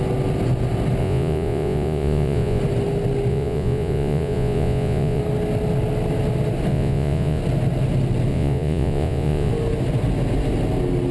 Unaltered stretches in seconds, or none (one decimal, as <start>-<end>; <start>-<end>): 0.0-1.0; 2.6-3.3; 5.2-6.7; 7.4-8.3; 9.5-11.1